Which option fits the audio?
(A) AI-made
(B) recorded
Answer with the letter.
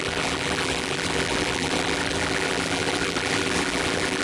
A